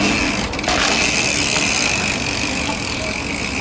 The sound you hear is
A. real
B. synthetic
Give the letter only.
A